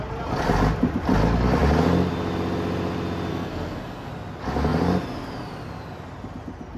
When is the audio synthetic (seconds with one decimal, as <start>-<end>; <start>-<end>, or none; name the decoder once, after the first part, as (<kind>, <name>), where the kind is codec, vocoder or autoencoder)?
3.3-4.1 (codec, SNAC)